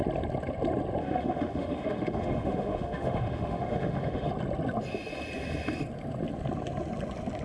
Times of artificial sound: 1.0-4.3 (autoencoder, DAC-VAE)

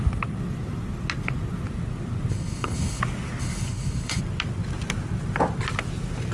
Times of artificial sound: 2.3-3.0 (codec, HILCodec); 3.4-4.2

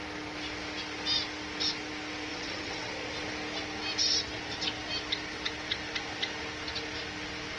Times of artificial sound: 2.3-2.9 (vocoder, WaveNeXt)

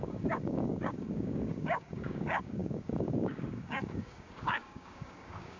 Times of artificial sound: 0.0-5.6 (codec, DAC)

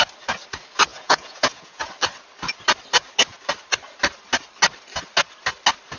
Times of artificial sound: 0.9-1.9 (vocoder, Vocos)